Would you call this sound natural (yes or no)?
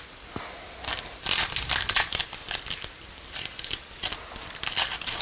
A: yes